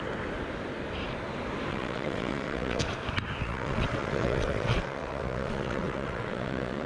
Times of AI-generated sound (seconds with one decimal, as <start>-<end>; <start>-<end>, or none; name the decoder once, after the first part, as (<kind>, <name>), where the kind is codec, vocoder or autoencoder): 1.7-2.8 (vocoder, WaveNeXt); 3.4-6.9